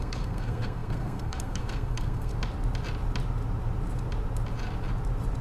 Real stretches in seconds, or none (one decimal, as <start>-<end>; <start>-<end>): 2.3-5.4